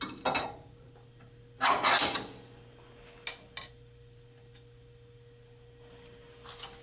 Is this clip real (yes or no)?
yes